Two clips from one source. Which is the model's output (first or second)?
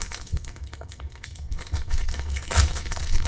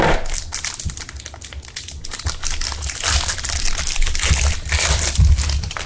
first